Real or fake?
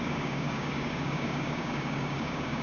fake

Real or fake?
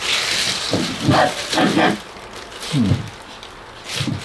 real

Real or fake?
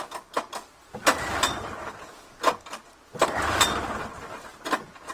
real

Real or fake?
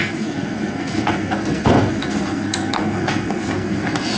fake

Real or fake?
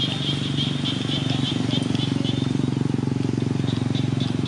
real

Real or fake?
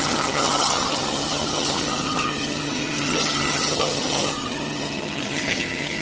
fake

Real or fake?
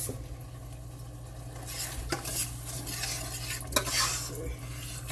real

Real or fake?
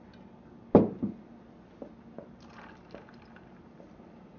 real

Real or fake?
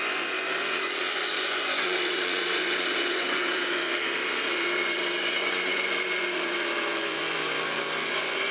fake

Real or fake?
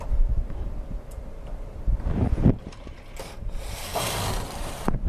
fake